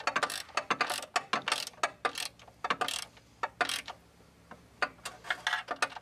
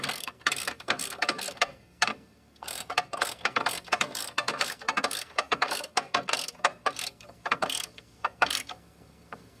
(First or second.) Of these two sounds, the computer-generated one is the second